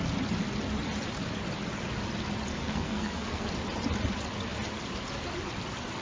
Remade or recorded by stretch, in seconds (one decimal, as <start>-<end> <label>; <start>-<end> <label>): 0.0-2.5 recorded; 2.5-3.5 remade; 3.5-6.0 recorded